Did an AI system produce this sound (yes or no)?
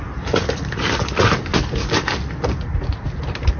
no